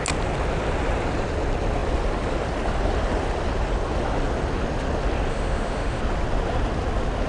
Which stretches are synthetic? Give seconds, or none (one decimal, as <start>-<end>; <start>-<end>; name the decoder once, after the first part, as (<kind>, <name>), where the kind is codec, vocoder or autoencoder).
5.3-6.0 (autoencoder, DAC-VAE)